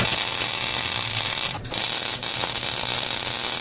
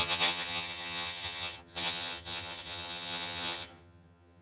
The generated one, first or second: second